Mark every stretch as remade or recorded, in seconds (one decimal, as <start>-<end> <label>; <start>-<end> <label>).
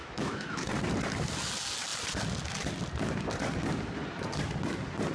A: 0.0-0.7 remade; 0.7-5.1 recorded